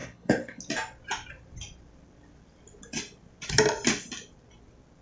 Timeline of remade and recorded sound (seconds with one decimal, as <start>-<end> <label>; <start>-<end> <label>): 0.0-0.6 remade; 0.6-5.0 recorded